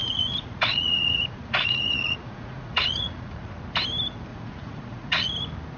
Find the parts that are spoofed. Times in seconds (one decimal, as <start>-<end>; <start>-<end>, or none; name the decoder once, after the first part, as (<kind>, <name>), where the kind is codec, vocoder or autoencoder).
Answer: 0.0-3.5 (vocoder, Vocos); 4.3-5.3